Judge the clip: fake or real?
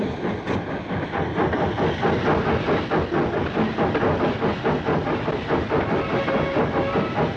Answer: real